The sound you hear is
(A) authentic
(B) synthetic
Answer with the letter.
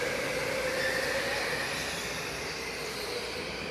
A